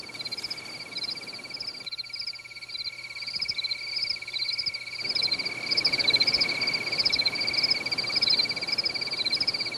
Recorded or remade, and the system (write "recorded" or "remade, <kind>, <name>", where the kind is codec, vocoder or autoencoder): recorded